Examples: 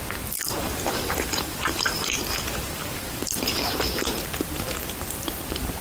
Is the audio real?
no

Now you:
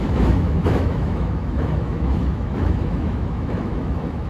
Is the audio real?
no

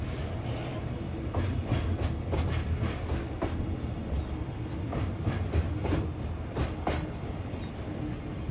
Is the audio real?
yes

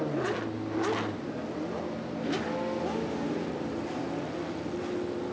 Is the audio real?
yes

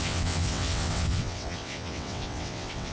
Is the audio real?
no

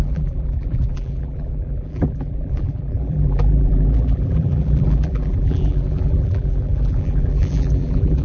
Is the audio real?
no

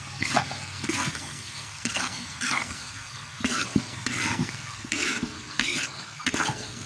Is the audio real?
no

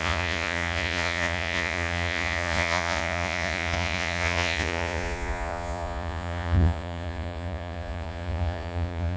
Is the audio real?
no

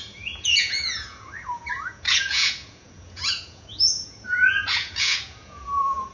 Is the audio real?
no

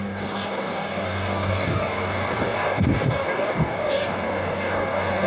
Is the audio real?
no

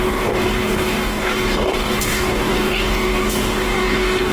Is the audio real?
no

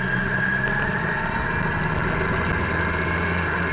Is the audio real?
yes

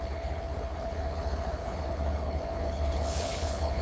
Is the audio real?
no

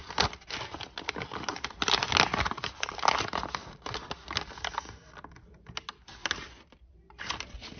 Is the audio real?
yes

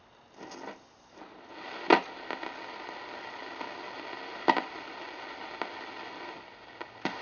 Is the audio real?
yes